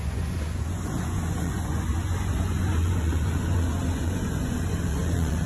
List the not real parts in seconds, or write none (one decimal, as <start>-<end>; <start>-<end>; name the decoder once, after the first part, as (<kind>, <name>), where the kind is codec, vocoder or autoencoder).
0.0-5.5 (vocoder, Vocos)

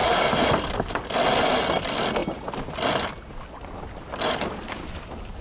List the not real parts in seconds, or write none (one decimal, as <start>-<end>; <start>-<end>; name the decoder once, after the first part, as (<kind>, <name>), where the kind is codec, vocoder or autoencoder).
none

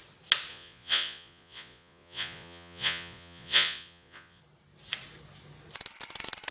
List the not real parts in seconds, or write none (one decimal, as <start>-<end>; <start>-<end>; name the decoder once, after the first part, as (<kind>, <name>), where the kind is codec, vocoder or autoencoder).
0.5-4.4 (vocoder, Vocos)

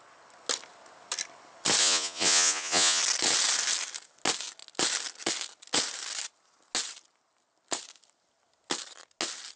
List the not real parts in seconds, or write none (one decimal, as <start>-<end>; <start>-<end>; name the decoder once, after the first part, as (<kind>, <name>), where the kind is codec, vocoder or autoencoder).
1.8-3.0 (vocoder, Vocos)

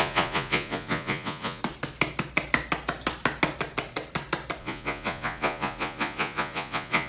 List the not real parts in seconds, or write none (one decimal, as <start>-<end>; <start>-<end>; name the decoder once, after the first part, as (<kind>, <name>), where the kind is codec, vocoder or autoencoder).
0.0-1.6 (vocoder, Vocos); 4.6-7.1

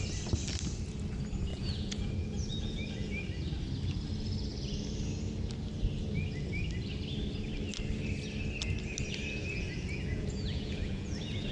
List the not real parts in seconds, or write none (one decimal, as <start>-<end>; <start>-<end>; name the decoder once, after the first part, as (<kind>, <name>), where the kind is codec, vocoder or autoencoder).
1.5-3.1 (vocoder, Vocos); 9.4-11.5